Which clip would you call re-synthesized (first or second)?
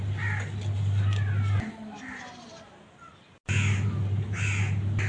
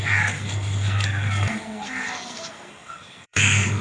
second